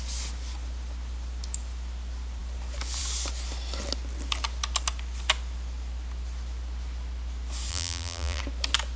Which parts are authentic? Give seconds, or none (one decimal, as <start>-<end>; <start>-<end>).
0.0-7.7; 8.4-9.0